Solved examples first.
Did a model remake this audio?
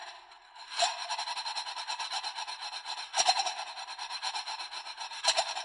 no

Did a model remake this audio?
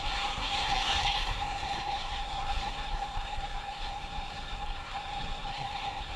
yes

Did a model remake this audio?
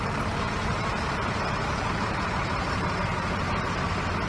no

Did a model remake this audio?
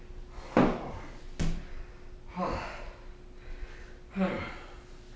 no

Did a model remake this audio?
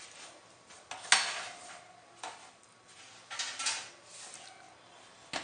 no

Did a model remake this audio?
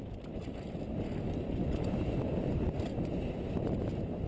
no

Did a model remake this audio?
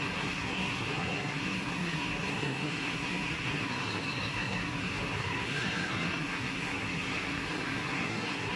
yes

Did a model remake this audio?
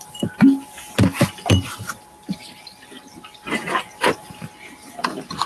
no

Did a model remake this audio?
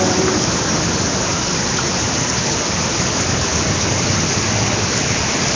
no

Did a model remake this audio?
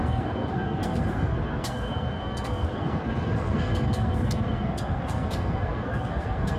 yes